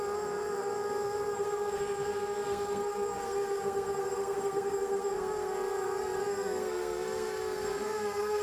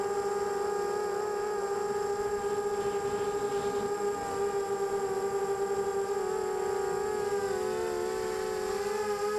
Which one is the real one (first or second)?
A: second